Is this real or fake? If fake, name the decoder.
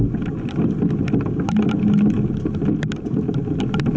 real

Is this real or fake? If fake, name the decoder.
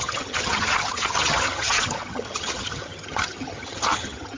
fake, vocoder, HiFi-GAN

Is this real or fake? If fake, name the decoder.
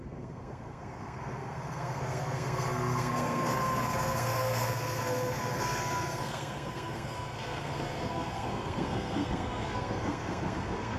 fake, codec, SNAC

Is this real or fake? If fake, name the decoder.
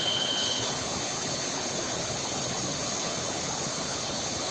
fake, codec, HILCodec